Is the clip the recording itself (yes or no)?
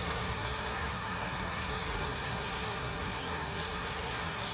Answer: no